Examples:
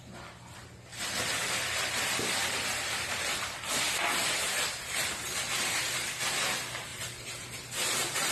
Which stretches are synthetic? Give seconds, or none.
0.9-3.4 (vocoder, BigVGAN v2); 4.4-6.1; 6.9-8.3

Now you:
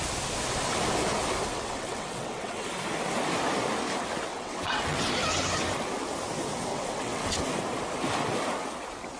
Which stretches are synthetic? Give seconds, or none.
1.5-2.7 (vocoder, WaveNeXt); 4.3-5.1; 6.7-7.4

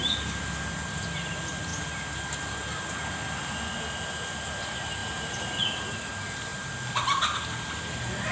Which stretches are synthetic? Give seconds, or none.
6.5-8.3 (vocoder, BigVGAN v2)

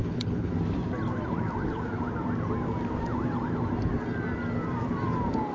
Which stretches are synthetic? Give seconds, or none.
0.0-0.5 (codec, HILCodec)